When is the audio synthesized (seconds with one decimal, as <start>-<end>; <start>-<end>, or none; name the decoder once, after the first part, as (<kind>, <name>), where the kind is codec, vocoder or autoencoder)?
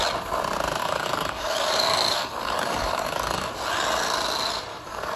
0.8-3.6 (codec, DAC); 4.7-5.2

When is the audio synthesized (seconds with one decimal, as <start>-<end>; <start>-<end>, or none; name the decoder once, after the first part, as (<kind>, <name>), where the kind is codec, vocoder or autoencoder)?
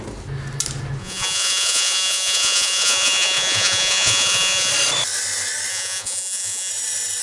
1.0-4.7 (vocoder, Vocos); 5.7-6.7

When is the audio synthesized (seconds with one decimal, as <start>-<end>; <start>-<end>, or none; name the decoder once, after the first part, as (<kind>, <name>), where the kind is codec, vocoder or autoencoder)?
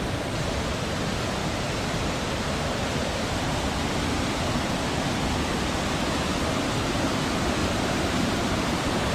7.6-9.1 (vocoder, BigVGAN v2)